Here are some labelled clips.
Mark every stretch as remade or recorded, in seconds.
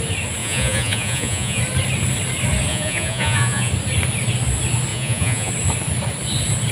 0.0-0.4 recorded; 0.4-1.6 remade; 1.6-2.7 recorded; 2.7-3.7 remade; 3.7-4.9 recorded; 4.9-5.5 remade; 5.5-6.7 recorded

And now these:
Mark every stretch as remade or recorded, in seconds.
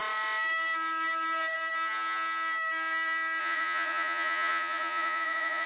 0.0-3.4 recorded; 3.4-5.7 remade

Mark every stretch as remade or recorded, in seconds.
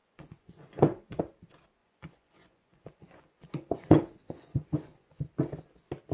0.0-1.2 remade; 1.2-1.8 recorded; 1.8-5.2 remade; 5.2-6.1 recorded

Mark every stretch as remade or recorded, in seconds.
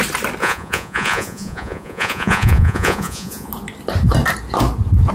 0.0-0.4 recorded; 0.4-3.5 remade; 3.5-5.1 recorded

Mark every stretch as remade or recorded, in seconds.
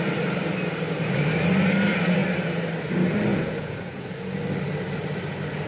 0.0-3.3 recorded; 3.3-4.4 remade; 4.4-5.7 recorded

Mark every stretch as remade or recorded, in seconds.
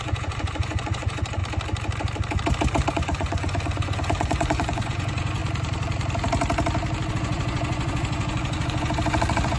0.0-1.4 remade; 1.4-2.9 recorded; 2.9-5.4 remade; 5.4-7.1 recorded; 7.1-9.6 remade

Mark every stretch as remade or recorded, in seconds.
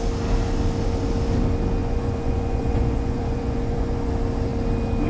0.0-1.8 recorded; 1.8-4.1 remade; 4.1-5.1 recorded